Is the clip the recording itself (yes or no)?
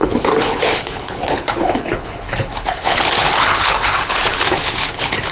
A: no